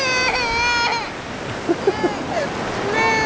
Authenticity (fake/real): real